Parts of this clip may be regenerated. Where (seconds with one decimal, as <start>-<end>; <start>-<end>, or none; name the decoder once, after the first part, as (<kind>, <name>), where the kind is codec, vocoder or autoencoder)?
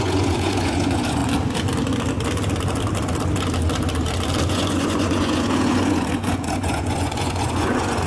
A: 0.0-1.2 (vocoder, Vocos); 4.5-8.1